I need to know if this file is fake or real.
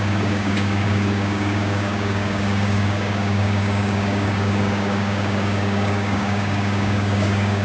fake